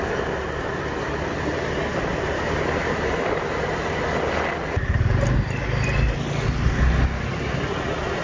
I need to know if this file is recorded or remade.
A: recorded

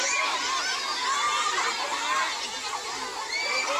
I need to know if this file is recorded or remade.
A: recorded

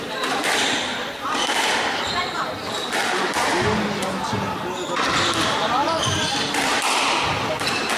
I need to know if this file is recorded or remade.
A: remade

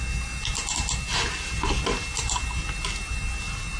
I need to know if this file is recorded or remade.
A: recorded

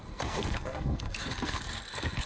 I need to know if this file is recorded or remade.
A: remade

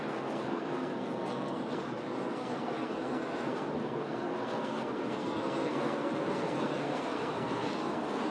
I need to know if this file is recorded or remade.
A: remade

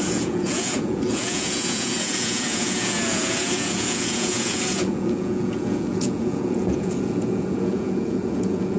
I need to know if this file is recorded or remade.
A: remade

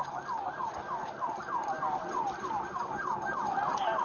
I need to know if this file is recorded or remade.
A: recorded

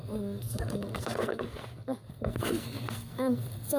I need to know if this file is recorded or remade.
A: remade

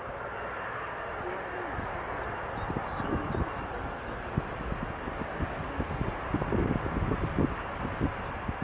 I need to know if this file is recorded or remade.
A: recorded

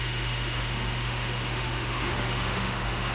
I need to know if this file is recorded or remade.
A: remade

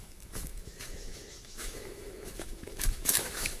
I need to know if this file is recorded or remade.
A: remade